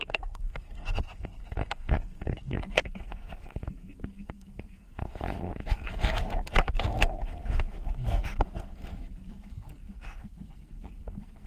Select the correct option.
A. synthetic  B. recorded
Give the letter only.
A